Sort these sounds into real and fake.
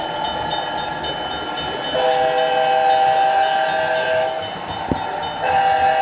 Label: real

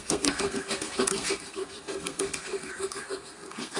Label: fake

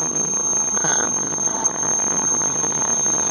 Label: fake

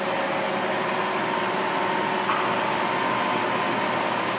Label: real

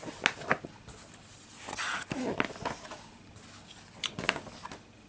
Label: real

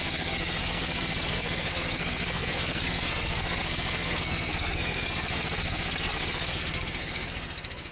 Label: fake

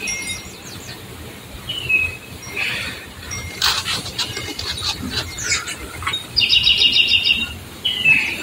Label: fake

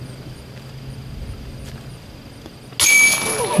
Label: real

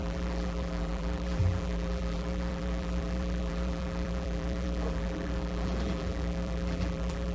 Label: fake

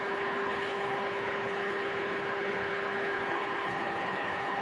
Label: fake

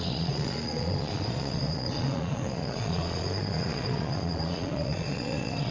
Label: fake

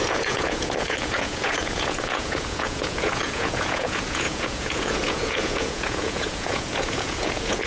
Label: fake